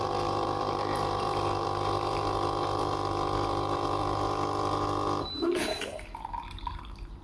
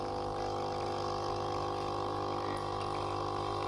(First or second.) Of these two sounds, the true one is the second